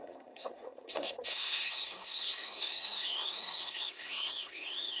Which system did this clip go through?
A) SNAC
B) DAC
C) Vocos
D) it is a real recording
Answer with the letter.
A